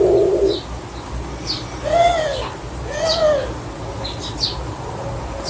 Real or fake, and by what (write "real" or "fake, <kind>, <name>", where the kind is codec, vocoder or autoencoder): real